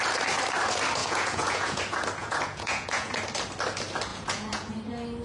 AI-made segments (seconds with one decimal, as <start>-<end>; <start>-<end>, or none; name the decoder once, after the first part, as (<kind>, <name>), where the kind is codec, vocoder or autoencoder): 1.0-1.8 (vocoder, Vocos); 2.2-3.1; 4.1-4.7